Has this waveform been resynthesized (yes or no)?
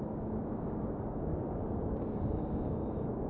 yes